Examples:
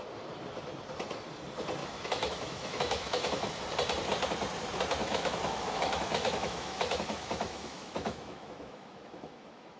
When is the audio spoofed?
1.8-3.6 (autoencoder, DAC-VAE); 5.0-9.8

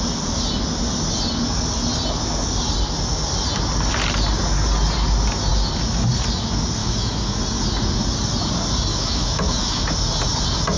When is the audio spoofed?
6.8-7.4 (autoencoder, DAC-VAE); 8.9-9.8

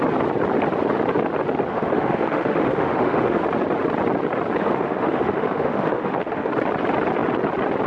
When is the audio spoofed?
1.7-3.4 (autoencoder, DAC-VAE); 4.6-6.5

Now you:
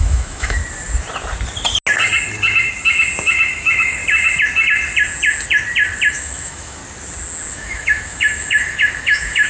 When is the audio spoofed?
0.0-0.6 (autoencoder, DAC-VAE); 3.5-4.0; 6.1-6.8; 7.5-9.5